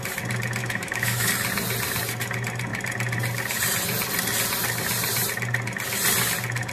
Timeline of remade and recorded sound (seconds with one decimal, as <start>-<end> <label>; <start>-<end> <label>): 0.0-0.6 recorded; 0.6-1.3 remade; 1.3-6.7 recorded